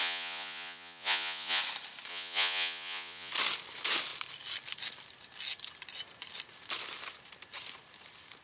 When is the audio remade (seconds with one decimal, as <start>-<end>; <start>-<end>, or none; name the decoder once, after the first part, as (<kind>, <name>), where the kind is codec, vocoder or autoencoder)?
0.0-1.6 (vocoder, Vocos); 2.1-3.3